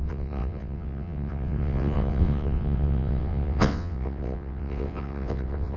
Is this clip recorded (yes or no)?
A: no